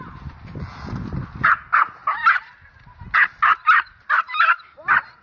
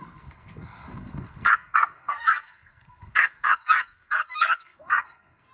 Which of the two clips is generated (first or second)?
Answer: second